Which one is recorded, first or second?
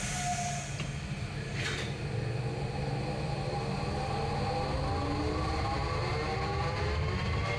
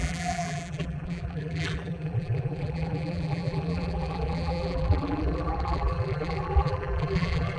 first